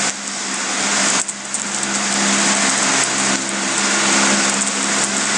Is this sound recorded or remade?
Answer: recorded